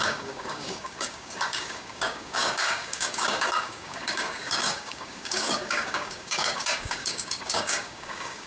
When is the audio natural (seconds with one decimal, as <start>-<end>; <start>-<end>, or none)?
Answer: none